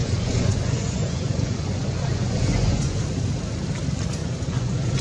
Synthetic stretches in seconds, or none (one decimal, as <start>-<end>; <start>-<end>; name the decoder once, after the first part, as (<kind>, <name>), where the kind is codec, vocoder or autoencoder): 0.0-3.0 (vocoder, Vocos); 4.2-5.0